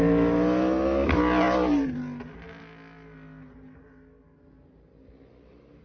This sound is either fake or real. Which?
real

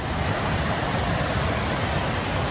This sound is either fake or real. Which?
real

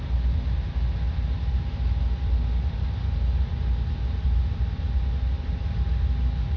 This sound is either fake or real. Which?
real